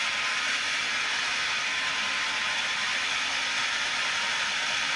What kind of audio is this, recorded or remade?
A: recorded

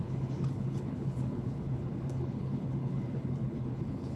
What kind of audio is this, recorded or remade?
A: remade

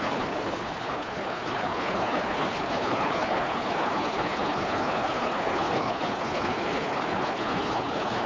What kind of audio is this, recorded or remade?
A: remade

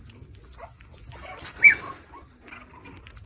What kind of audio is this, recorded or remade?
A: recorded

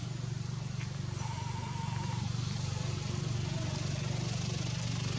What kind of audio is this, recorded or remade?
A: recorded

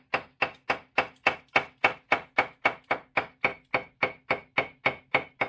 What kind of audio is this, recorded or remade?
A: recorded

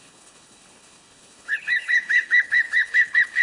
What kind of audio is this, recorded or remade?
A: remade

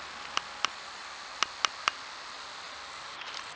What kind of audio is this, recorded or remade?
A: recorded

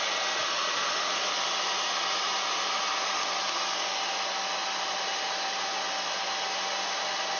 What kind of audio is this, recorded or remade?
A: recorded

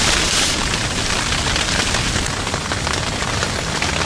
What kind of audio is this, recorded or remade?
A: recorded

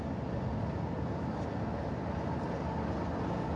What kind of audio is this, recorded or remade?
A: recorded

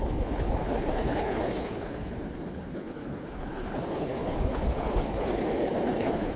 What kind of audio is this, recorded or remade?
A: remade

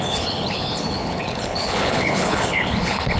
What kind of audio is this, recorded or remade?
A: remade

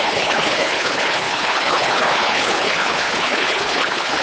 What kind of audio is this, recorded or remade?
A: remade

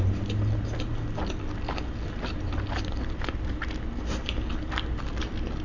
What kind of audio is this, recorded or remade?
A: recorded